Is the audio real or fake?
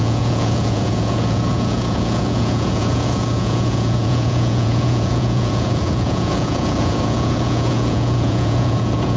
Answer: fake